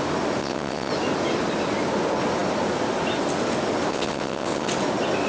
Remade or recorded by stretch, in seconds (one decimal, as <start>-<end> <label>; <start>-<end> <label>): 0.0-0.4 recorded; 0.4-0.9 remade; 0.9-3.9 recorded; 3.9-4.7 remade; 4.7-5.3 recorded